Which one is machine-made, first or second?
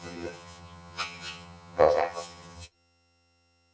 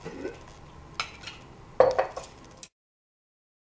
first